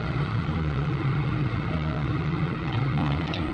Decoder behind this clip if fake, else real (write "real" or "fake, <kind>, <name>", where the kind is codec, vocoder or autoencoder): fake, vocoder, Vocos